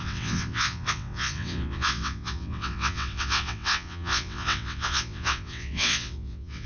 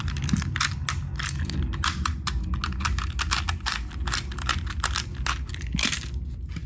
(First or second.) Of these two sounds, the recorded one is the second